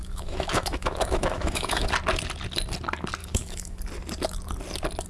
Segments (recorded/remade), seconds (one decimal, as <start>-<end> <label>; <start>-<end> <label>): 0.0-1.9 remade; 1.9-3.2 recorded; 3.2-3.8 remade; 3.8-5.1 recorded